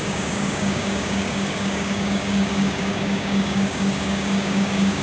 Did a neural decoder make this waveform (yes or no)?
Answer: yes